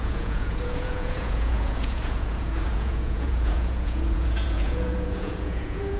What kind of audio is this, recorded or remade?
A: remade